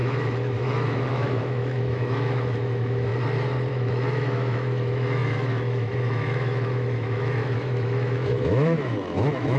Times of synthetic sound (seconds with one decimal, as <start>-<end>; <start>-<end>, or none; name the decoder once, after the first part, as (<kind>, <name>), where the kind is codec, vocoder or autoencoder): 0.0-3.1 (autoencoder, DAC-VAE); 3.7-9.6

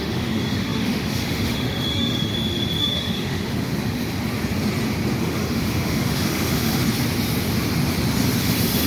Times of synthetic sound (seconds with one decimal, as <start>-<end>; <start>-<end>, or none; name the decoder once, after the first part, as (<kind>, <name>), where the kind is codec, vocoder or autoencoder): 0.0-2.3 (autoencoder, DAC-VAE); 2.8-3.7; 5.2-6.8; 8.4-8.9

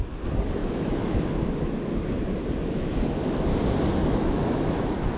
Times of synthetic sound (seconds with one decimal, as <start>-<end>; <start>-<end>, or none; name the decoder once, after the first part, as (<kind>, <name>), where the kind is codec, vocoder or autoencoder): 0.6-1.2 (autoencoder, DAC-VAE); 4.0-5.2

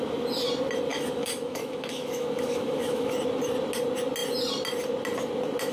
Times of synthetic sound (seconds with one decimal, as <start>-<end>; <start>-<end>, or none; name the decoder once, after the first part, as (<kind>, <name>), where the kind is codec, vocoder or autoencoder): 0.9-3.1 (autoencoder, DAC-VAE)